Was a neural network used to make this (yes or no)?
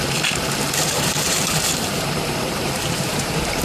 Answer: yes